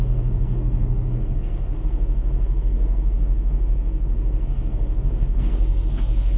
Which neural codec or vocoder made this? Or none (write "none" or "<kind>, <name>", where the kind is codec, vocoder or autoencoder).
codec, SNAC